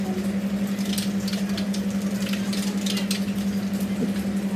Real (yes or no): yes